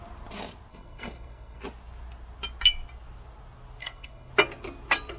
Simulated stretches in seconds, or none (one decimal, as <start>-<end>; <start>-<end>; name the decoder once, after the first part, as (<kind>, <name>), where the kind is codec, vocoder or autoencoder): 0.7-1.6 (codec, SNAC); 3.8-4.3